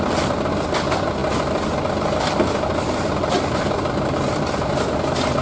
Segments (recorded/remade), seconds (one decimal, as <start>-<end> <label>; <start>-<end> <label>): 0.0-5.4 recorded